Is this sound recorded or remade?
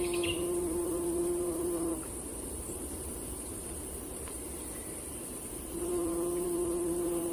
remade